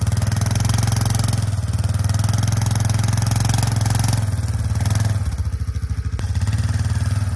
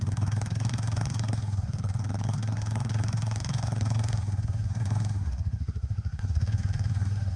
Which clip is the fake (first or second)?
second